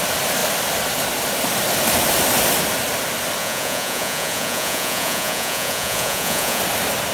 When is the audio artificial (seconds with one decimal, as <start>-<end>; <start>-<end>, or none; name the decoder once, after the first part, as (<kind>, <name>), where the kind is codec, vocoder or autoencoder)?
3.4-6.6 (vocoder, Vocos)